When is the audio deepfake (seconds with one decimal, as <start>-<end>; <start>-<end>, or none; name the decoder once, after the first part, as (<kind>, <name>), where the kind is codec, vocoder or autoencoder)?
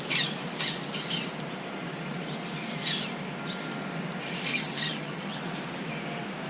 4.5-5.4 (vocoder, HiFi-GAN)